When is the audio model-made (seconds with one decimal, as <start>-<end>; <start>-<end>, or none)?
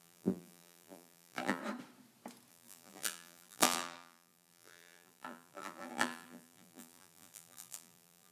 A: 0.0-1.6; 2.5-8.3